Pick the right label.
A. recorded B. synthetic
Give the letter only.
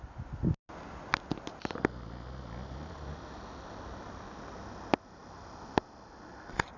A